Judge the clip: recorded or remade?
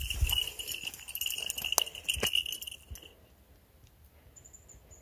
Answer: recorded